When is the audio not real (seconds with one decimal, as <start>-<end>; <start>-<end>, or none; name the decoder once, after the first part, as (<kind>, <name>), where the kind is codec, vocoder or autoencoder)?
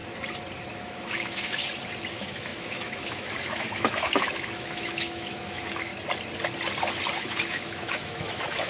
0.7-1.6 (autoencoder, DAC-VAE); 2.1-5.9; 7.2-8.7